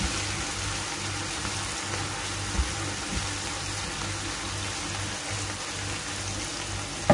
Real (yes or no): yes